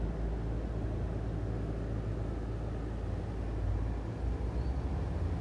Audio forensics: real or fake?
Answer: real